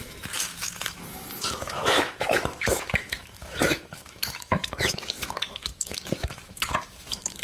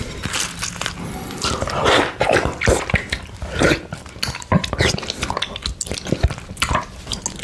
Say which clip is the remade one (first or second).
first